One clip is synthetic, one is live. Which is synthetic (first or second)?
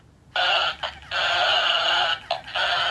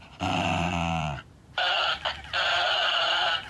second